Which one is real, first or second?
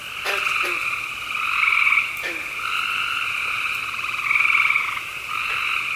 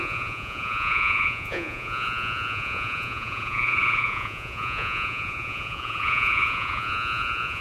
first